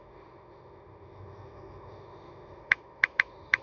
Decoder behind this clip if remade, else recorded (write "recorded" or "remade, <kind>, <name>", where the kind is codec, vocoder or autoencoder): remade, autoencoder, DAC-VAE